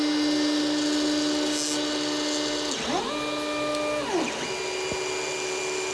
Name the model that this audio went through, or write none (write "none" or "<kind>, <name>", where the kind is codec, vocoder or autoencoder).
none